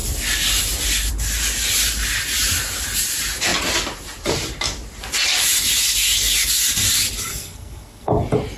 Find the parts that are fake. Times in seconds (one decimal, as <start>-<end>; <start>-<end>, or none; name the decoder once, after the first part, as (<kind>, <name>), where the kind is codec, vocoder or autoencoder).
7.3-8.1 (codec, SNAC)